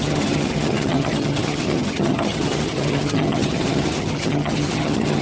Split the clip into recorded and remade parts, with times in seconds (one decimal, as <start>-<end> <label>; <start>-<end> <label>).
0.0-5.2 remade